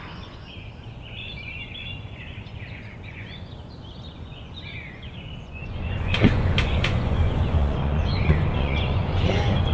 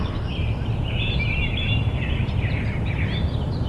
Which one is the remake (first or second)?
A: first